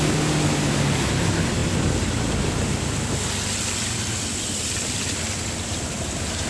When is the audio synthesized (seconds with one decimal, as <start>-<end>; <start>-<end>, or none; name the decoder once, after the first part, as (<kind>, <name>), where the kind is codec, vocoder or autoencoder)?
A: none